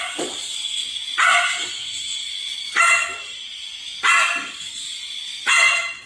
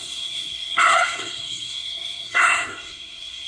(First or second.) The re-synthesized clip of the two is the second